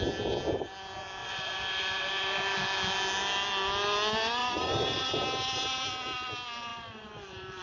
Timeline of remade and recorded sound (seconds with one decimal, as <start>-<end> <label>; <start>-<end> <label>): 0.0-1.2 recorded; 1.2-2.1 remade; 2.1-4.4 recorded; 4.4-5.1 remade; 5.1-6.7 recorded; 6.7-7.6 remade

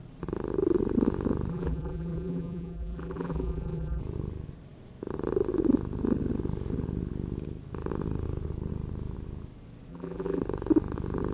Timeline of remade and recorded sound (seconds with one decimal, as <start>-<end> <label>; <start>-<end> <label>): 0.0-1.5 recorded; 1.5-4.0 remade; 4.0-9.9 recorded; 9.9-10.4 remade; 10.4-11.3 recorded